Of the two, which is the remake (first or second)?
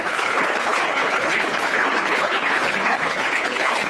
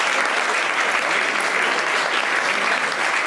first